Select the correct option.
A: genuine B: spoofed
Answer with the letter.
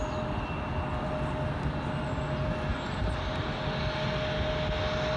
A